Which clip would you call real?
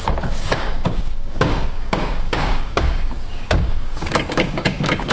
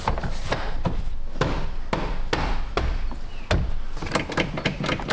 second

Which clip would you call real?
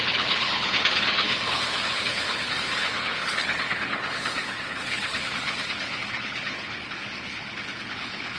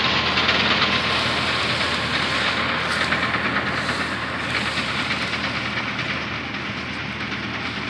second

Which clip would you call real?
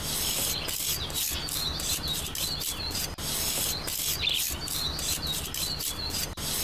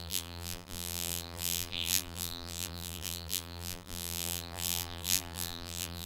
first